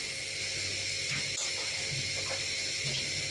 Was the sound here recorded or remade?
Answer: recorded